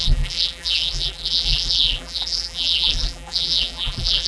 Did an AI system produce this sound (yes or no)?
yes